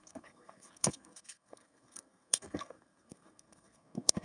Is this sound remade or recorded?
remade